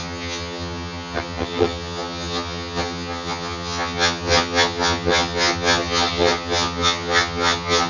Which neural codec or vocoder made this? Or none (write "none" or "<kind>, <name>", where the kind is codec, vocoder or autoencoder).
vocoder, HiFi-GAN